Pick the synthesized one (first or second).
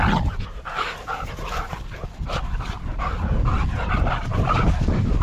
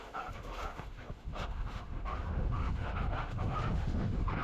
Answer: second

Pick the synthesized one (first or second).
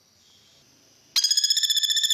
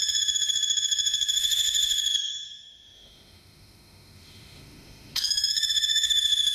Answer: second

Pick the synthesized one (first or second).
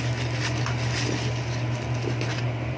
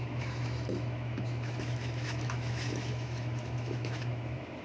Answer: second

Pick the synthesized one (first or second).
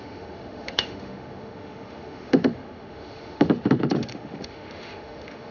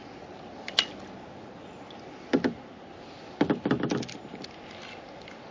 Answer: first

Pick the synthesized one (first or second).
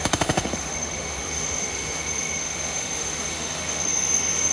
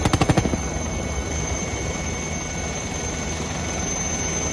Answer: first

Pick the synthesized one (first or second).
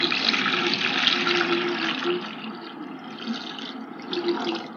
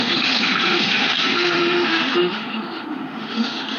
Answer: second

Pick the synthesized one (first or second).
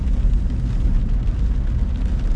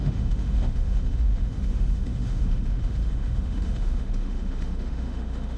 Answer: second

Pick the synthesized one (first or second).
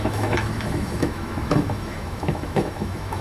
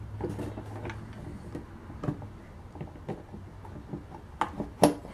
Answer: first